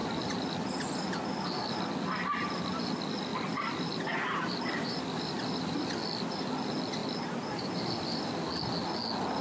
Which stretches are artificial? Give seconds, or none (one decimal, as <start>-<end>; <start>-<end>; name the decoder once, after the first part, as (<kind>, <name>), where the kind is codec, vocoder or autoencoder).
3.3-5.9 (vocoder, BigVGAN v2); 7.0-8.3

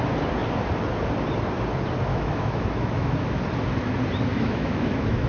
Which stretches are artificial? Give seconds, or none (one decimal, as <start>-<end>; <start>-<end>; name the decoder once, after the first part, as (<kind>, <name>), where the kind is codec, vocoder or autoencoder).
2.1-3.4 (autoencoder, DAC-VAE); 4.3-5.3